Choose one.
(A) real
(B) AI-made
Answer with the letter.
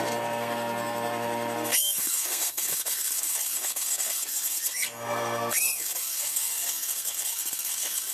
B